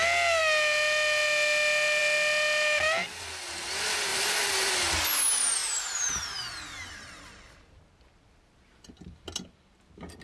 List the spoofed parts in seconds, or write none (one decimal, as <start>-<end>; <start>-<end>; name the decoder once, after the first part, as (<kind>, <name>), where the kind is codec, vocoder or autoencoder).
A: 4.1-4.7 (vocoder, BigVGAN v2); 5.6-7.2